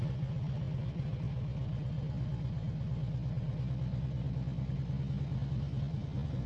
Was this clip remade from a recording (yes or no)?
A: no